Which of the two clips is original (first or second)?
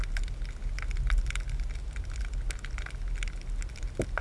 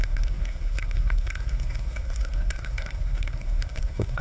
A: first